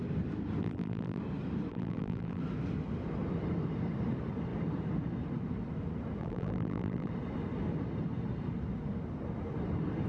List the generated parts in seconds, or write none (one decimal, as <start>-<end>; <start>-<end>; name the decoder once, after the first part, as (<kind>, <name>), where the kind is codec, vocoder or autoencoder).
0.6-1.2 (vocoder, BigVGAN v2); 1.7-2.4; 6.2-7.1